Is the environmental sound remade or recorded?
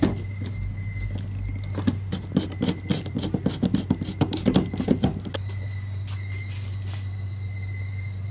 recorded